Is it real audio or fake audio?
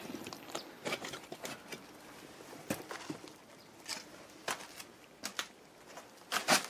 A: real